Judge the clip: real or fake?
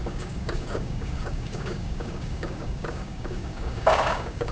fake